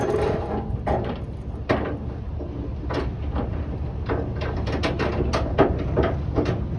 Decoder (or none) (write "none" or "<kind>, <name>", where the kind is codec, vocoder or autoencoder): none